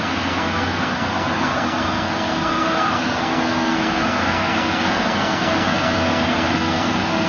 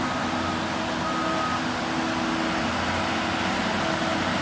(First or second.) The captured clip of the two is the second